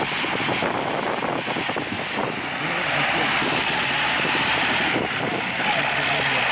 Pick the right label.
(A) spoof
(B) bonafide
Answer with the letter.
B